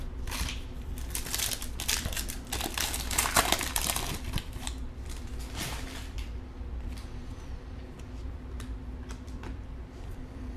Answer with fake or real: fake